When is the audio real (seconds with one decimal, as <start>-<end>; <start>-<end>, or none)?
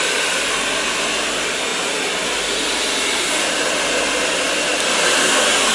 0.0-5.7